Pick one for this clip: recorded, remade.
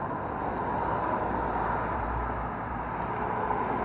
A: recorded